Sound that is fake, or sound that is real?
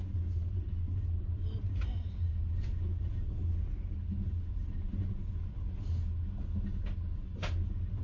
real